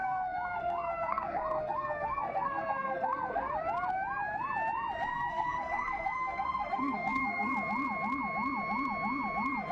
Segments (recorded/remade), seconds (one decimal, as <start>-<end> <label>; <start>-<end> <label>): 0.0-3.5 remade; 3.5-5.1 recorded; 5.1-7.5 remade; 7.5-9.7 recorded